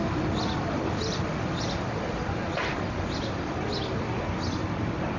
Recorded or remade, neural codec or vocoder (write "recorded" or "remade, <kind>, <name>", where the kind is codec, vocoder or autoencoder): recorded